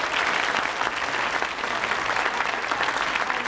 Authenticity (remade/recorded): recorded